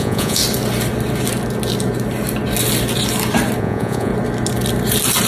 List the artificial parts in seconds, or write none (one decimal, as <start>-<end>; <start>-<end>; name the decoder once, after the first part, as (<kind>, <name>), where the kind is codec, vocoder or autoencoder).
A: 0.0-0.4 (vocoder, Vocos); 3.6-4.1